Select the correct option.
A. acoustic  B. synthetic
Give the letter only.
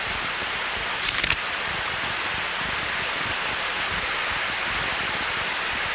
A